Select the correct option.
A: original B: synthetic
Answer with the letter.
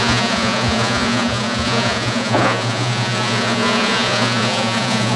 B